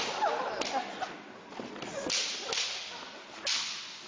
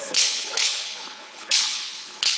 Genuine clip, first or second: first